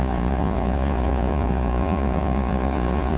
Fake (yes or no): yes